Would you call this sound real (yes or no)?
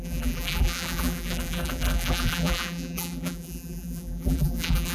no